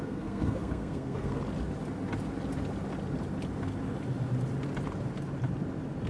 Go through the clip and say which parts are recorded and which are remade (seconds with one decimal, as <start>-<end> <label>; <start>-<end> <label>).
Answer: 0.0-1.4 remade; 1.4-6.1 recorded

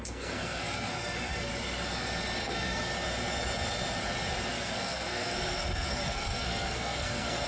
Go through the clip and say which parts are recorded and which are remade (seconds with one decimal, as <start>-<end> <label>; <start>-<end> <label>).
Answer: 0.0-1.5 remade; 1.5-2.4 recorded; 2.4-2.9 remade; 2.9-4.5 recorded; 4.5-7.5 remade

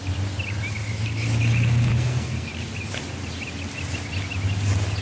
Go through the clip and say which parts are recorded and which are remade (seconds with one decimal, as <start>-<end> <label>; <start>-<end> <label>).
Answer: 0.0-1.9 recorded; 1.9-2.5 remade; 2.5-5.0 recorded

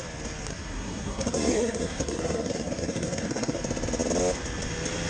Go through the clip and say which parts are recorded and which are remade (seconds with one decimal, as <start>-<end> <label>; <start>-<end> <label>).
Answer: 0.0-0.5 recorded; 0.5-3.6 remade; 3.6-5.1 recorded